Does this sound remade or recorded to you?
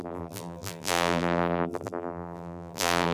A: remade